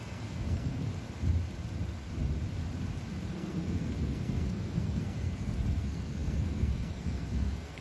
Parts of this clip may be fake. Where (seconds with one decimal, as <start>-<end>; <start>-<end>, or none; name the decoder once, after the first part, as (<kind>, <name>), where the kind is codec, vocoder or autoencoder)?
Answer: 0.0-0.9 (codec, SNAC); 3.3-7.8